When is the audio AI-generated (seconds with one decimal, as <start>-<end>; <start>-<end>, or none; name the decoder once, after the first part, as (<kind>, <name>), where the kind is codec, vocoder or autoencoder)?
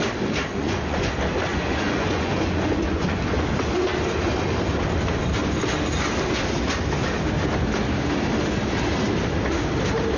0.5-1.1 (vocoder, Vocos); 1.5-3.2